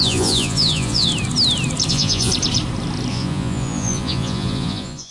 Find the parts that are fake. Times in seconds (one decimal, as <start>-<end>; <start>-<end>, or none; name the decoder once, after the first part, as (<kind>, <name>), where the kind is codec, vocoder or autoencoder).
0.0-1.1 (vocoder, Vocos); 1.9-2.3; 3.1-5.1